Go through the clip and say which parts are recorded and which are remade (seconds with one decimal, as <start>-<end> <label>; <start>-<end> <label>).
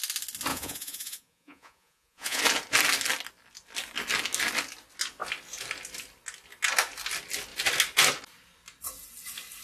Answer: 0.0-0.5 recorded; 0.5-2.4 remade; 2.4-9.6 recorded